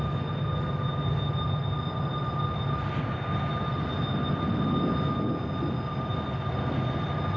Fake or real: real